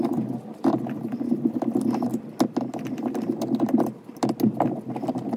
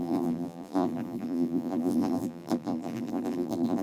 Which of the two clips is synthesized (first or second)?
second